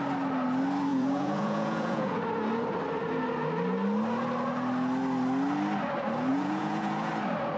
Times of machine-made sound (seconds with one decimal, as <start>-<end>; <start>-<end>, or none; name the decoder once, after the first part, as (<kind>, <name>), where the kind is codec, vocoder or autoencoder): 0.9-2.2 (vocoder, Vocos); 6.3-7.1